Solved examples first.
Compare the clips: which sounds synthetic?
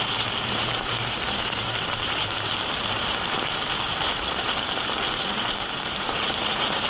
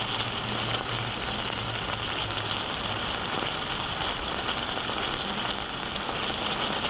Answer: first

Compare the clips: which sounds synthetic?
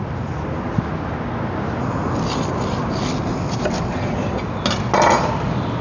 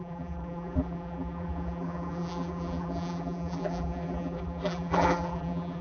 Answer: second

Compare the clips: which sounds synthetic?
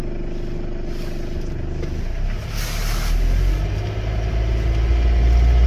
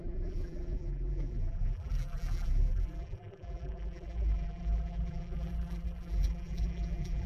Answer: second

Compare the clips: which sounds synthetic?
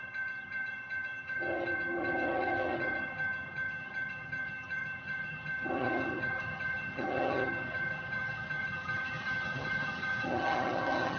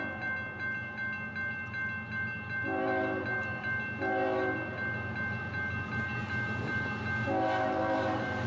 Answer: first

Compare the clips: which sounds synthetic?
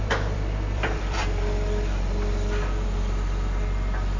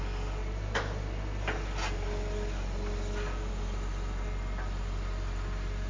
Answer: first